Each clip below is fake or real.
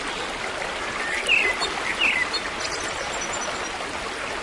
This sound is real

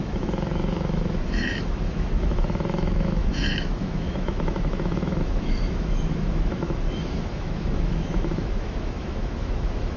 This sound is fake